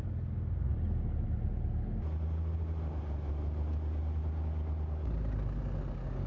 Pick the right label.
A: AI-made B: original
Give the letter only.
B